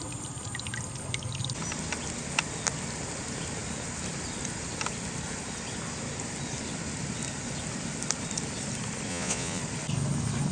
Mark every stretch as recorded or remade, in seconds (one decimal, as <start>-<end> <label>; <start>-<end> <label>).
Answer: 0.0-9.1 recorded; 9.1-9.6 remade; 9.6-10.5 recorded